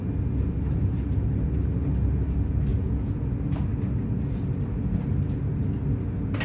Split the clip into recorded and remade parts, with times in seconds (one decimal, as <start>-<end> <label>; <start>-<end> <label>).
0.0-2.7 recorded; 2.7-3.2 remade; 3.2-6.4 recorded